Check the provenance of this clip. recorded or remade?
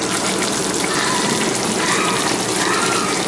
recorded